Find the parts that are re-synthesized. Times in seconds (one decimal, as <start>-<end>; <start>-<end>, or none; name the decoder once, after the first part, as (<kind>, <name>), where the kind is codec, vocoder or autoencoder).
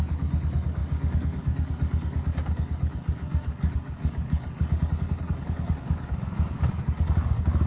0.0-7.7 (codec, DAC)